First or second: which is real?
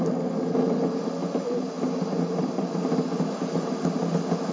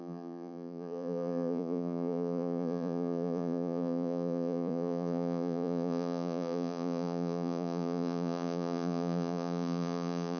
first